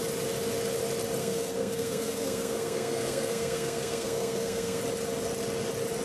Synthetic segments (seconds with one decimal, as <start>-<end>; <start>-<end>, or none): 1.2-4.8